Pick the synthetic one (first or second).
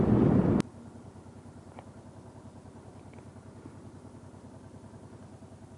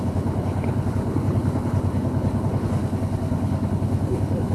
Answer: second